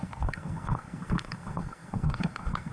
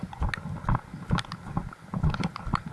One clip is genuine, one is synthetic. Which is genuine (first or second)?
second